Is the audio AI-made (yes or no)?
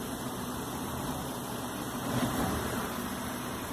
yes